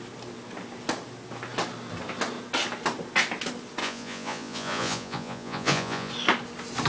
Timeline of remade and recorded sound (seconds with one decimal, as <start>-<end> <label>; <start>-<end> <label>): 0.0-3.8 recorded; 3.8-6.1 remade; 6.1-6.9 recorded